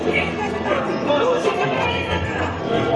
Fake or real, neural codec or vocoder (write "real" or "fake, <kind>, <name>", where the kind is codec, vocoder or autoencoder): fake, codec, SNAC